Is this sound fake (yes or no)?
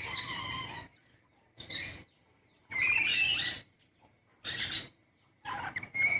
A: yes